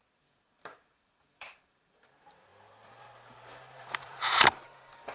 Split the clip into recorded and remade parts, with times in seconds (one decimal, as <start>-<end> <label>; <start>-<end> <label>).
0.0-5.1 remade